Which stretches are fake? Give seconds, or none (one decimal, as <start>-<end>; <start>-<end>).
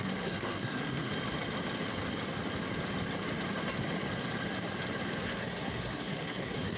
0.0-1.1; 5.2-6.8